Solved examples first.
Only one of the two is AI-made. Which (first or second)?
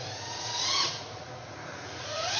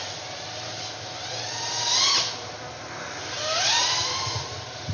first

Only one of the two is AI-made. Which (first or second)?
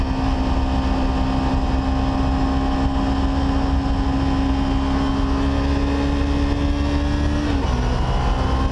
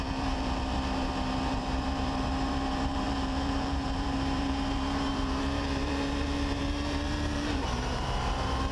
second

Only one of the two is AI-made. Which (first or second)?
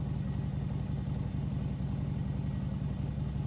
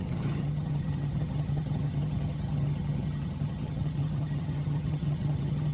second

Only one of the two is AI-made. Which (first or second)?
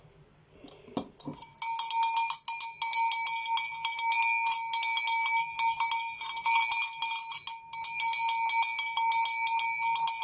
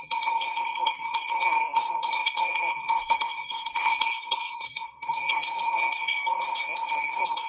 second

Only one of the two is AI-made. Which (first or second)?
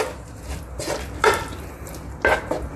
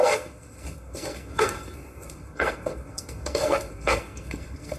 second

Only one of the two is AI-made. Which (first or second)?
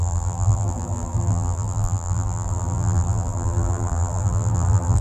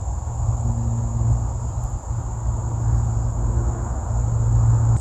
first